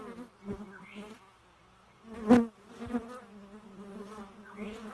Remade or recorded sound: recorded